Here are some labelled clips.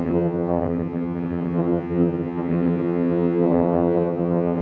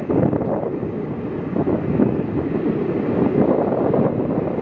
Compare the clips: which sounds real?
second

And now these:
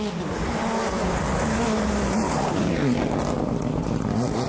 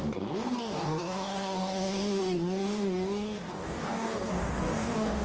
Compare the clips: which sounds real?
first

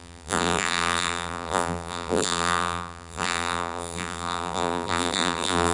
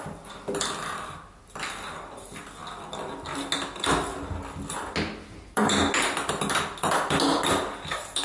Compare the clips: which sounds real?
second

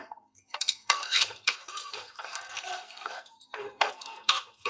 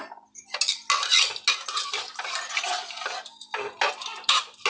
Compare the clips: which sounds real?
second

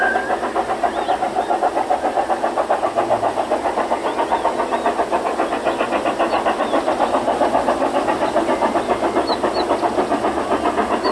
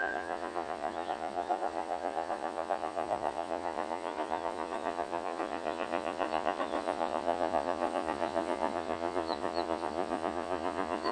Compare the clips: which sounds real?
first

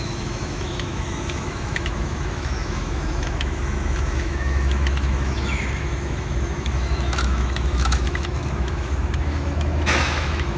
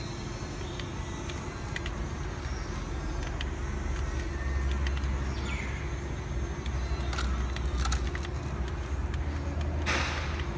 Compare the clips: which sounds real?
second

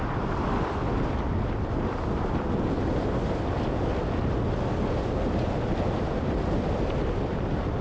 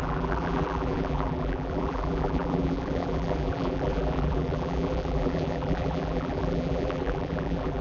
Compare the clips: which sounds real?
first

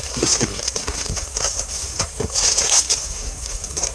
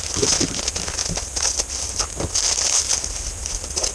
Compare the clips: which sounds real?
second